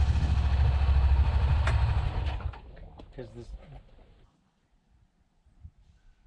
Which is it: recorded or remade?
recorded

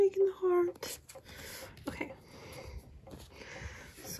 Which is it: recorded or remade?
recorded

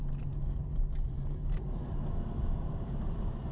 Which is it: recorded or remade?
remade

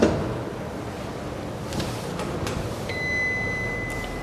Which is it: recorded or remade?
recorded